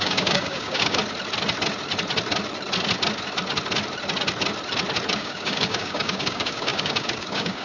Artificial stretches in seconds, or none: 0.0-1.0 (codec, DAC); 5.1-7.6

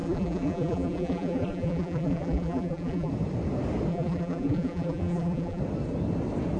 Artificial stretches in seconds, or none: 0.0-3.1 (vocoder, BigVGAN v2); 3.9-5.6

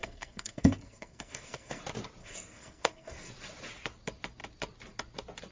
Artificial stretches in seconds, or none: 0.0-1.8 (codec, SNAC); 2.2-3.3